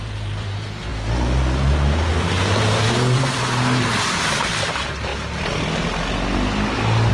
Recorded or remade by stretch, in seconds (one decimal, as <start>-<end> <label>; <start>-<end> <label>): 0.0-0.9 remade; 0.9-4.0 recorded; 4.0-5.1 remade; 5.1-7.1 recorded